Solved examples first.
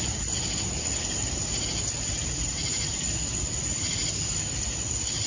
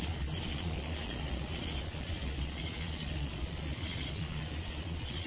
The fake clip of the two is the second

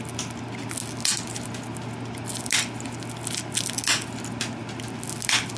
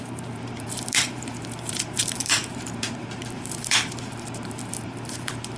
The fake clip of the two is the second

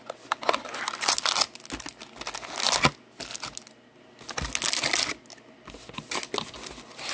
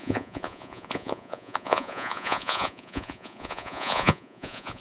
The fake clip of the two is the second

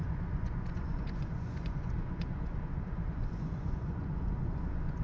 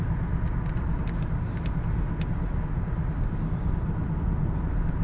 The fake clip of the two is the first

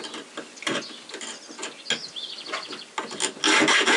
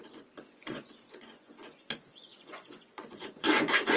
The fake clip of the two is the second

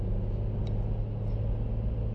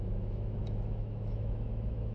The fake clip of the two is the second